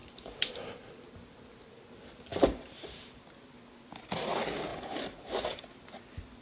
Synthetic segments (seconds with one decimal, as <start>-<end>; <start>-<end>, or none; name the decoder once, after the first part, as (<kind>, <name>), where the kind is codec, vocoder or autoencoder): 0.0-0.5 (vocoder, BigVGAN v2); 2.3-3.3; 4.7-5.6